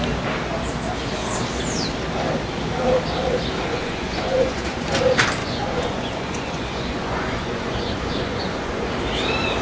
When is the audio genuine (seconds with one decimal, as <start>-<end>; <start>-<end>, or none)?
0.0-3.7; 4.6-5.4; 8.9-9.6